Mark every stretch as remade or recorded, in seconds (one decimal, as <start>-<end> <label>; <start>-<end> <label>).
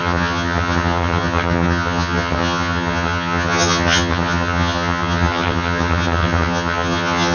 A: 0.0-7.3 remade